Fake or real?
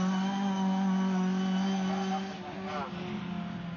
real